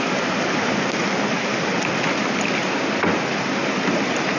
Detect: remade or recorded recorded